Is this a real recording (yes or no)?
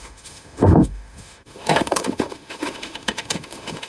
no